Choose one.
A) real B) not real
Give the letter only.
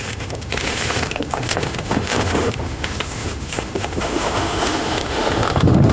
B